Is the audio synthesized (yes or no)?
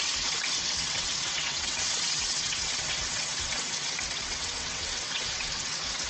yes